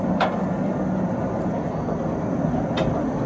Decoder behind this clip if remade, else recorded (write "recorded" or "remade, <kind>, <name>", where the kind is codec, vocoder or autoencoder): recorded